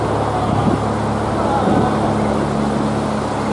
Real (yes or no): yes